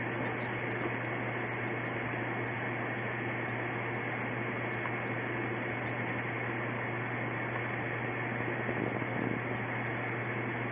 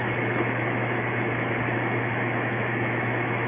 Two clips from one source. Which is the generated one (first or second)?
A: second